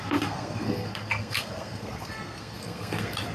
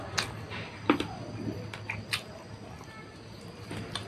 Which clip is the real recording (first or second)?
second